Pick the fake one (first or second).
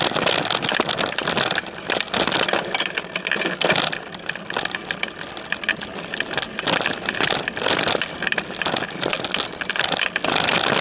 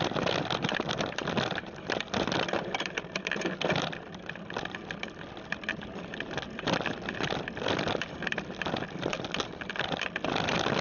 second